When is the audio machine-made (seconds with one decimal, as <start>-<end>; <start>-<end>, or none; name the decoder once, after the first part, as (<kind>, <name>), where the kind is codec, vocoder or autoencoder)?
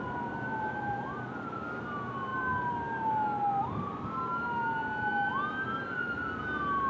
none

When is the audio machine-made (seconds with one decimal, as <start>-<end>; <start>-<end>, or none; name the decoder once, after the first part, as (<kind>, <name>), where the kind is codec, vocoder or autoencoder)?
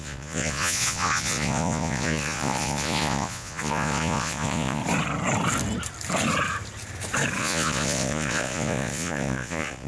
0.0-4.8 (vocoder, Vocos); 7.4-9.9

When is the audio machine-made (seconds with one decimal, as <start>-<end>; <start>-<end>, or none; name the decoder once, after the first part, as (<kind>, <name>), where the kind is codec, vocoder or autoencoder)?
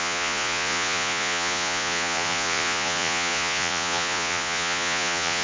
0.0-5.4 (vocoder, Vocos)